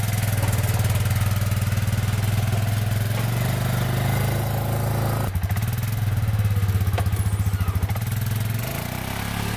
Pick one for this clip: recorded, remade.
recorded